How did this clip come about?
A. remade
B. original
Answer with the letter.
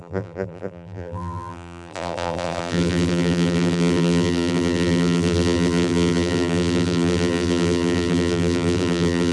A